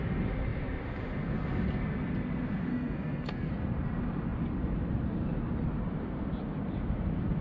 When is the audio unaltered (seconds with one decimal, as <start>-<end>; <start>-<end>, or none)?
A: 0.0-2.7; 3.5-7.4